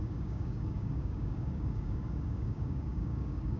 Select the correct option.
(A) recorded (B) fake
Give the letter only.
B